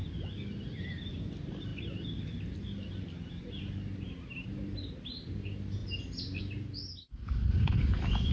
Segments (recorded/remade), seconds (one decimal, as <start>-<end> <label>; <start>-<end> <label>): 0.0-8.3 recorded